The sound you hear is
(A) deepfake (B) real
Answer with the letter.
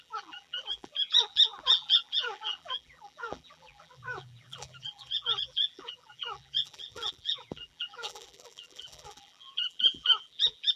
A